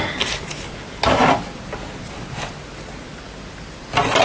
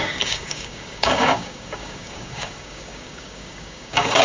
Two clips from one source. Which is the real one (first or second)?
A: first